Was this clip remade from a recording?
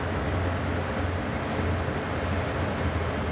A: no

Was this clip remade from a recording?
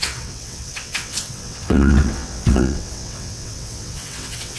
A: yes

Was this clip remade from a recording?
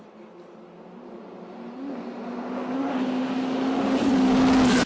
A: no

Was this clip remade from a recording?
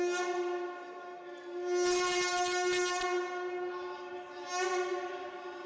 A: no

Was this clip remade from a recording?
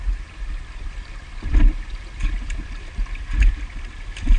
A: yes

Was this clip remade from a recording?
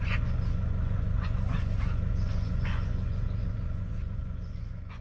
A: yes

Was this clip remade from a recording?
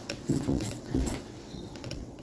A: yes